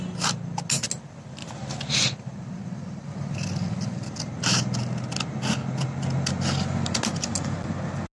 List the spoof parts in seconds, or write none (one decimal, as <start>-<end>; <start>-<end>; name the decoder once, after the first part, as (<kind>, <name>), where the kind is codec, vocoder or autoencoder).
none